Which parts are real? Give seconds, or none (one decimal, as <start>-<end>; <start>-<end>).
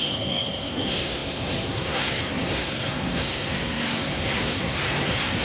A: none